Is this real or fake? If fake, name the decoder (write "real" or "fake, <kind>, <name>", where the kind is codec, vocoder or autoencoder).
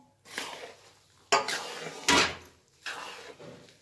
real